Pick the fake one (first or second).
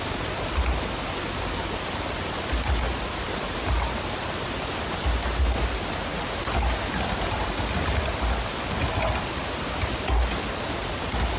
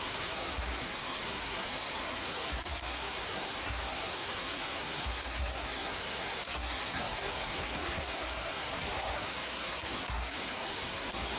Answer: second